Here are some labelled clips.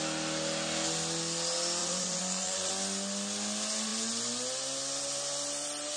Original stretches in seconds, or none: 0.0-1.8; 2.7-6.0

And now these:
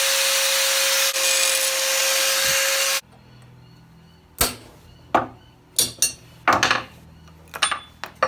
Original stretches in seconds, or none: 0.0-8.3

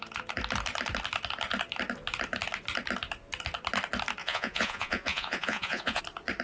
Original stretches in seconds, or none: 0.0-4.2; 6.0-6.4